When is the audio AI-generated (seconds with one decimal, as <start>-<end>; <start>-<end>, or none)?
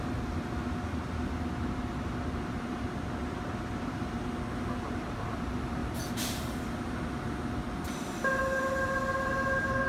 none